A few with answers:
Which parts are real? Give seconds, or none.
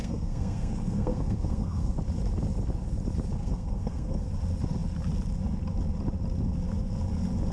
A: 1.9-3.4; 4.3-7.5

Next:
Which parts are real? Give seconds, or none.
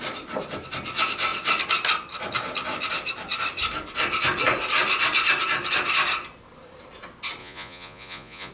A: 0.0-7.4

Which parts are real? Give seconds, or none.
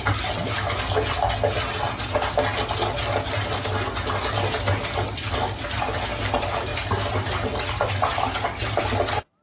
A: 0.0-9.4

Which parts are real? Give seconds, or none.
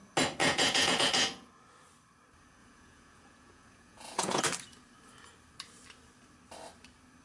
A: 0.0-0.4; 1.5-2.6; 4.4-7.2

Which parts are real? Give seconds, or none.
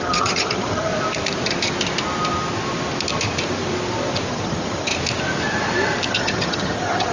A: 0.9-4.3; 4.9-6.1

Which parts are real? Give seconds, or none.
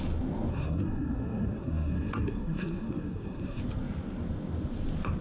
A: 0.0-0.5; 3.6-5.2